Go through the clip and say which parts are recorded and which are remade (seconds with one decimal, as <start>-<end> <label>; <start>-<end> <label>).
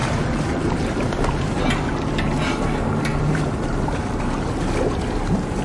0.0-1.6 remade; 1.6-3.1 recorded; 3.1-3.9 remade; 3.9-5.6 recorded